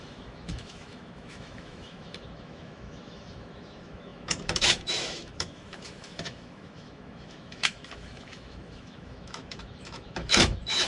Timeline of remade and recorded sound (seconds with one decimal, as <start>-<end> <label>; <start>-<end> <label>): 0.0-10.9 remade